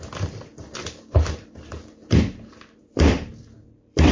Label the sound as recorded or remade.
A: remade